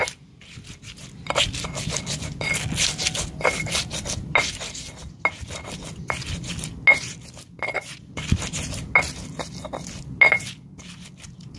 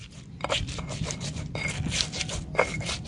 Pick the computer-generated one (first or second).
second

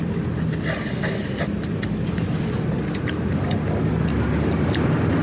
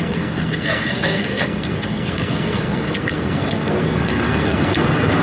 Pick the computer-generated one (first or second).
second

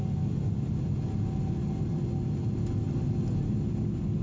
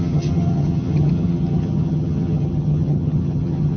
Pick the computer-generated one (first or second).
second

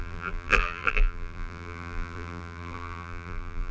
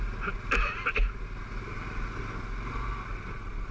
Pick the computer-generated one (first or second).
first